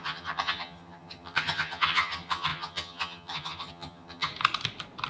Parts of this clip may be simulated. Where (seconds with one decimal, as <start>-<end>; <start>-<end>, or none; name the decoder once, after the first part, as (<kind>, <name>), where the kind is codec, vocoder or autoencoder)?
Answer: 0.0-4.3 (vocoder, HiFi-GAN)